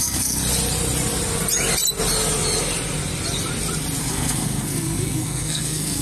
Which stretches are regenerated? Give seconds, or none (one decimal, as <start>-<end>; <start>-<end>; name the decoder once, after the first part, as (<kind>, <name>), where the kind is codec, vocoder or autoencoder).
0.0-0.4 (codec, SNAC); 4.0-6.0